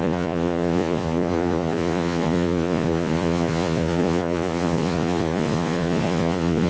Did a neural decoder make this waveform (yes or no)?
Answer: yes